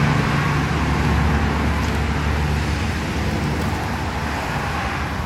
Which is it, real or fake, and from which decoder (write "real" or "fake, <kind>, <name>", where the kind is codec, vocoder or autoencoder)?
real